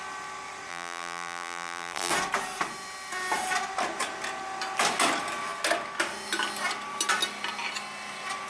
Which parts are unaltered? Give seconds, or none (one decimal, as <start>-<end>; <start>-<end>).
0.0-0.7; 2.1-8.5